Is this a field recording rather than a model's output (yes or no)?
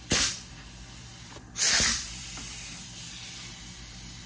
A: no